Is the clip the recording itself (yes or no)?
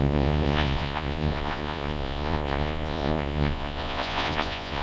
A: no